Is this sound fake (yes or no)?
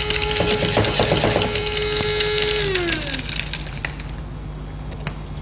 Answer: no